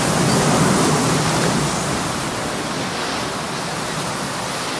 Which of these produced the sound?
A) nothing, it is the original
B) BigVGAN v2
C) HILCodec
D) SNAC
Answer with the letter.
A